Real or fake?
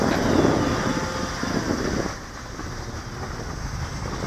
real